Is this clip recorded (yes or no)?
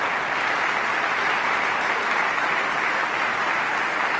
yes